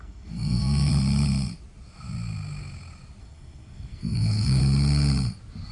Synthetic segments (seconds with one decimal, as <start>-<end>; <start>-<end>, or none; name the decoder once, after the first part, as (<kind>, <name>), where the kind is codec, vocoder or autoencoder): 0.0-0.9 (codec, SNAC); 3.2-4.6